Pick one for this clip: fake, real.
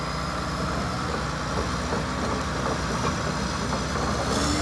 real